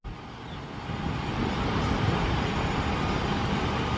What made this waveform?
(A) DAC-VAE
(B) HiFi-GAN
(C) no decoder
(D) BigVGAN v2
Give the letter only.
C